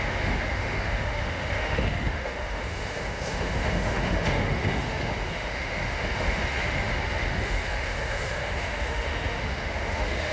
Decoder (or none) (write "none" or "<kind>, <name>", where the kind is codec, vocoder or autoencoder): autoencoder, DAC-VAE